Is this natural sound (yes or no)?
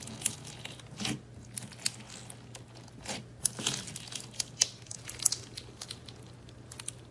yes